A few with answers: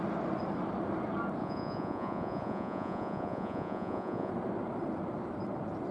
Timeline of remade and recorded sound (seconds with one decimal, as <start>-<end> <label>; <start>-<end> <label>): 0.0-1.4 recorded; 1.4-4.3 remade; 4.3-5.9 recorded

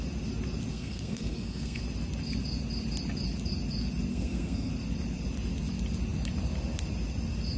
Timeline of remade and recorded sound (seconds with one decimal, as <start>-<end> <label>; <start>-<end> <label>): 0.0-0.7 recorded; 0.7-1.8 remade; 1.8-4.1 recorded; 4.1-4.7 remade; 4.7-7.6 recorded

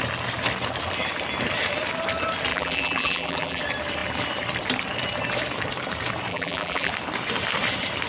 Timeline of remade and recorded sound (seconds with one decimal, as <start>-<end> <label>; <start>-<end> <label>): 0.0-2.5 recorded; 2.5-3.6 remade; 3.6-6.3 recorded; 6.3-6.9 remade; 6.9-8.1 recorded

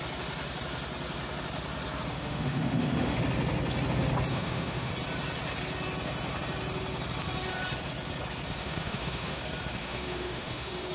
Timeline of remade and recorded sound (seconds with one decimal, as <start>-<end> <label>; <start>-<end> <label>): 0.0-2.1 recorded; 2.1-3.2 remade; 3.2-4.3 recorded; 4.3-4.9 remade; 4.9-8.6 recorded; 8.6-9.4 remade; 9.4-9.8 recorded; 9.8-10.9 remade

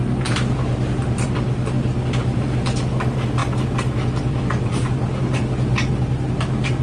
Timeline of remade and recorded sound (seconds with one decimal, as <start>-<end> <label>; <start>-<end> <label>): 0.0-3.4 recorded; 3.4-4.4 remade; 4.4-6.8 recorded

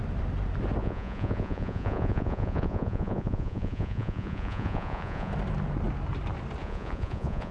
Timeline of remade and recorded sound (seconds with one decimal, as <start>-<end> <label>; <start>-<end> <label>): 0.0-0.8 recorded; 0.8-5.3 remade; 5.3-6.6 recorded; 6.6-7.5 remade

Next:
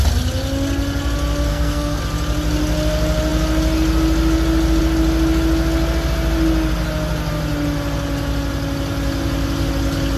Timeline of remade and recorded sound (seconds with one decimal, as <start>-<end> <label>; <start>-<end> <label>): 0.0-1.5 recorded; 1.5-2.0 remade; 2.0-10.2 recorded

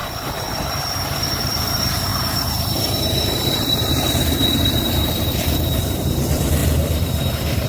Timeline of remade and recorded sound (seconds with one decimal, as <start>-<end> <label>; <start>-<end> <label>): 0.0-7.7 remade